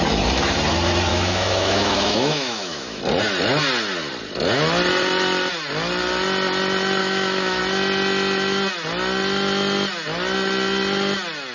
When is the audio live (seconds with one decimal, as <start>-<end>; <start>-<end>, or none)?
0.0-1.1; 3.0-7.0; 7.6-11.5

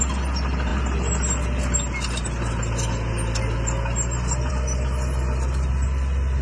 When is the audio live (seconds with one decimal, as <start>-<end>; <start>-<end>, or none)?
0.0-6.4

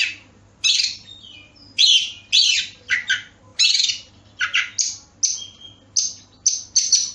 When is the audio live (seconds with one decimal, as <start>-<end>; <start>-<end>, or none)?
0.0-7.1